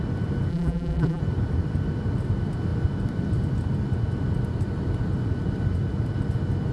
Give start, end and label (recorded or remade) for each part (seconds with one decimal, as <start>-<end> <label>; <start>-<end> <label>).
0.0-0.5 recorded; 0.5-1.2 remade; 1.2-6.7 recorded